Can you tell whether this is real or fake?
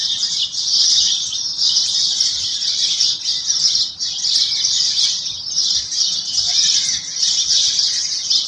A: real